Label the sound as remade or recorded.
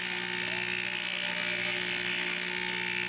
recorded